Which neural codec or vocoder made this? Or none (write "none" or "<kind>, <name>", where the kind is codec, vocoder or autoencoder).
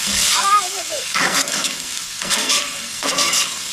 codec, SNAC